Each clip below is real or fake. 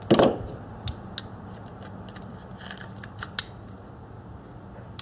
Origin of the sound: real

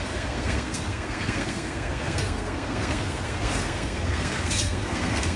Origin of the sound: fake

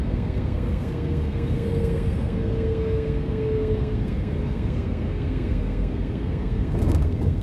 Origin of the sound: fake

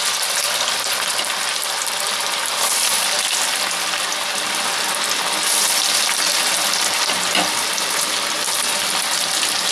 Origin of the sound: real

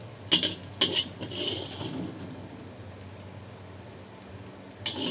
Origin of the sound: real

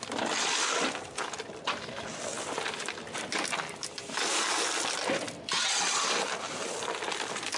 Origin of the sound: real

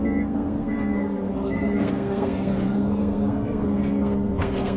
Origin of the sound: fake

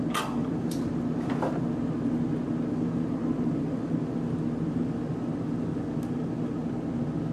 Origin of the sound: real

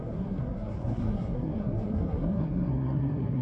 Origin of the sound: fake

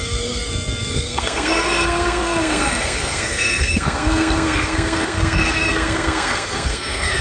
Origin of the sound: fake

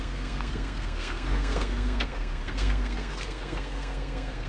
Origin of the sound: fake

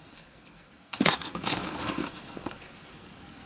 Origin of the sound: fake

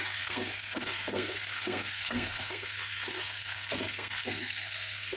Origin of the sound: fake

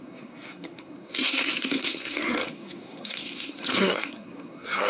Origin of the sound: fake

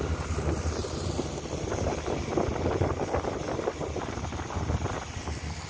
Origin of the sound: real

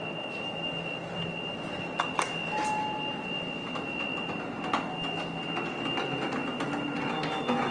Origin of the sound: real